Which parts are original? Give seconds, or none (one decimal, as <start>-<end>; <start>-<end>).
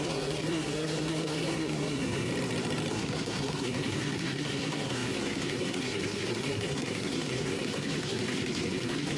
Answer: 2.3-2.9